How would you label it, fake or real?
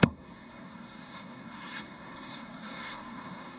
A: fake